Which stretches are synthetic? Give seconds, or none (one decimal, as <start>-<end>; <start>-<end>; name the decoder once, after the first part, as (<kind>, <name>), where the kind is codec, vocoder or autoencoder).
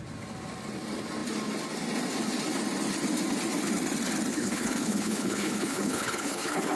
4.3-6.8 (codec, HILCodec)